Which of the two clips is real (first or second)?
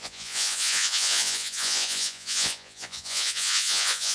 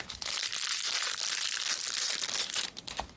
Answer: second